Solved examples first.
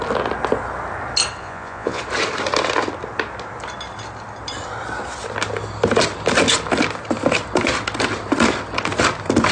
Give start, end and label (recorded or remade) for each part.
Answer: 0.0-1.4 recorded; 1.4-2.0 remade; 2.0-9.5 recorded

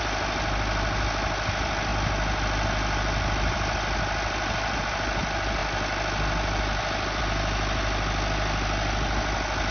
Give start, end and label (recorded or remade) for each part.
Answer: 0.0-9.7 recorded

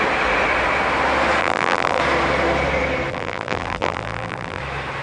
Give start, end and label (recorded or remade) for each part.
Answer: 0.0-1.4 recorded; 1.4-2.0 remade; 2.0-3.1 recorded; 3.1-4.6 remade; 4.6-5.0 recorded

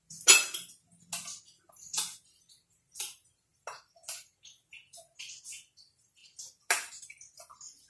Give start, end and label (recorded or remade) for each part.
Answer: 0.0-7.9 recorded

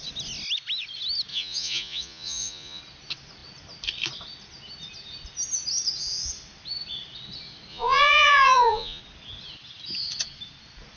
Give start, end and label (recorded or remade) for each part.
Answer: 0.0-1.3 recorded; 1.3-2.8 remade; 2.8-7.7 recorded; 7.7-9.0 remade; 9.0-11.0 recorded

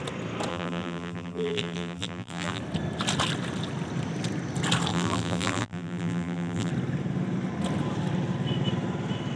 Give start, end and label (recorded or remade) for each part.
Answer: 0.0-0.5 recorded; 0.5-2.6 remade; 2.6-4.9 recorded; 4.9-6.7 remade; 6.7-9.4 recorded

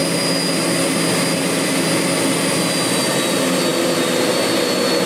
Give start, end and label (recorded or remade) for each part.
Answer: 0.0-5.1 recorded

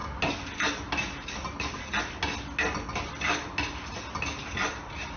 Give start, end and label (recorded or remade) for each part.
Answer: 0.0-5.2 recorded